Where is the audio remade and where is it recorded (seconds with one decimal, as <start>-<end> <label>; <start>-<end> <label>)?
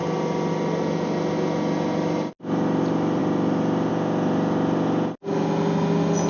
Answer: 0.0-6.3 recorded